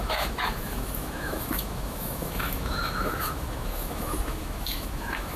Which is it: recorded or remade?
remade